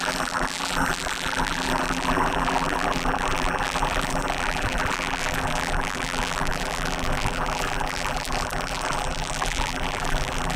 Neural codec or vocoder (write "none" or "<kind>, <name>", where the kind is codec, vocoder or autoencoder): vocoder, BigVGAN v2